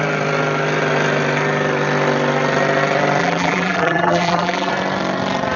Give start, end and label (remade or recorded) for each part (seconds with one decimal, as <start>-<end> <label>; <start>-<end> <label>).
0.0-3.2 recorded; 3.2-4.7 remade; 4.7-5.6 recorded